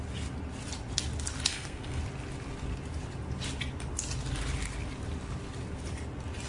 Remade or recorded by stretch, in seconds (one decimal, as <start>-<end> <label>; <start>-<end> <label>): 0.0-1.5 recorded; 1.5-2.0 remade; 2.0-6.5 recorded